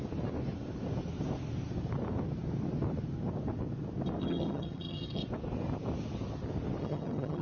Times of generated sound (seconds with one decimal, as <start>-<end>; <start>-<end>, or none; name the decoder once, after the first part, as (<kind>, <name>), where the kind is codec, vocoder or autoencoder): 4.2-5.2 (vocoder, HiFi-GAN); 6.8-7.4